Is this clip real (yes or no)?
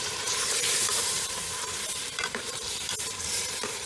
no